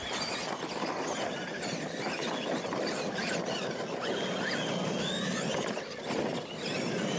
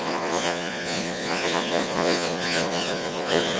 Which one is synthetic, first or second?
second